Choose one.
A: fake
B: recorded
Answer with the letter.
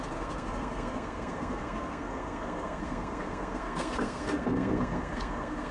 A